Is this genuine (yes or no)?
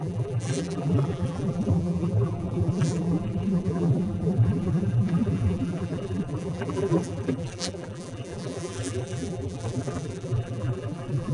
no